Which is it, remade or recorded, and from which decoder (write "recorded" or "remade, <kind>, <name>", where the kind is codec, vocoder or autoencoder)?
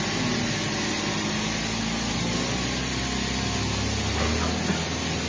recorded